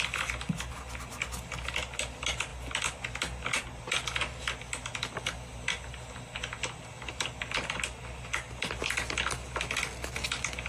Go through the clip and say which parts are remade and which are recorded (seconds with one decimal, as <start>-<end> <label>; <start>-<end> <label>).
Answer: 0.0-10.7 recorded